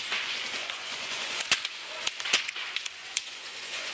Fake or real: fake